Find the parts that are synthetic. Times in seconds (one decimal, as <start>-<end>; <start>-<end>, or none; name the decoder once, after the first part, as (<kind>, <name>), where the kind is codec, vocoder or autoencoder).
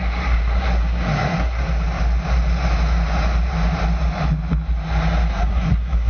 0.0-1.6 (codec, SNAC); 5.3-6.1